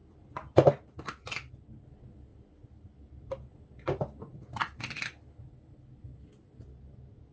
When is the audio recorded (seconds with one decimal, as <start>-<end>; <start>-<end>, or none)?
1.5-2.3; 3.5-4.3; 4.8-7.3